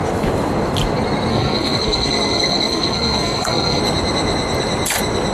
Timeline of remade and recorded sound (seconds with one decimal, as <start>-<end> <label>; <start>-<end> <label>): 0.0-1.3 recorded; 1.3-3.8 remade; 3.8-5.3 recorded